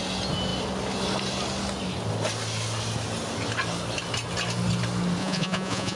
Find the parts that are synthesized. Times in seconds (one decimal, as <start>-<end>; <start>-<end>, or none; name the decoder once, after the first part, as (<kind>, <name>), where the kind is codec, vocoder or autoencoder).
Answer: 5.2-6.0 (vocoder, Vocos)